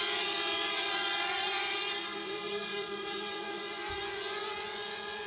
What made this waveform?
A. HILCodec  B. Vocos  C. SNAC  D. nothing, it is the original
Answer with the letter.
B